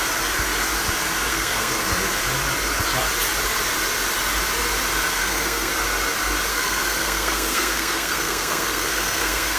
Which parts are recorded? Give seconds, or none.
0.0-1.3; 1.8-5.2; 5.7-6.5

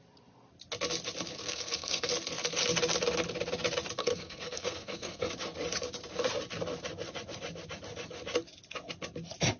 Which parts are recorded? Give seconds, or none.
0.0-1.4; 2.1-4.0; 5.3-9.6